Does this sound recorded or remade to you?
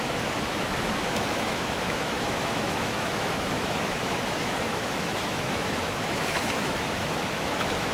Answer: remade